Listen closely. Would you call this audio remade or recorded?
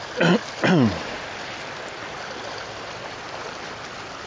recorded